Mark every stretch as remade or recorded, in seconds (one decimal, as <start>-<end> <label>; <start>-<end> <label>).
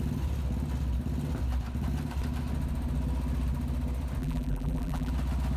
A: 0.0-4.2 recorded; 4.2-5.1 remade; 5.1-5.6 recorded